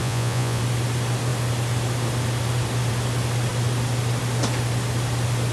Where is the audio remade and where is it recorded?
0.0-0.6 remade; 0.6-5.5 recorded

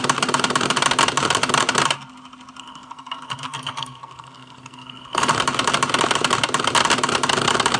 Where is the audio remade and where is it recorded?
0.0-2.6 recorded; 2.6-5.3 remade; 5.3-7.8 recorded

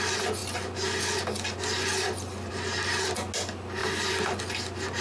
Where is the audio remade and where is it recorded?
0.0-5.0 recorded

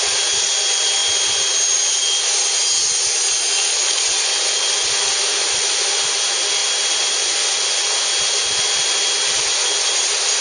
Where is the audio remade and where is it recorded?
0.0-10.4 recorded

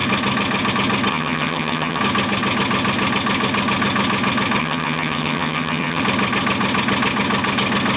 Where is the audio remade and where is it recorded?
0.0-1.1 recorded; 1.1-2.0 remade; 2.0-4.6 recorded; 4.6-6.0 remade; 6.0-8.0 recorded

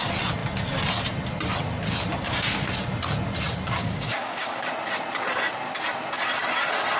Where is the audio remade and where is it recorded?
0.0-3.8 recorded; 3.8-4.7 remade; 4.7-7.0 recorded

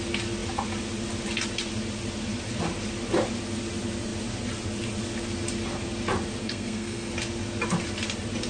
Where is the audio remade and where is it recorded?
0.0-6.4 recorded; 6.4-7.1 remade; 7.1-8.5 recorded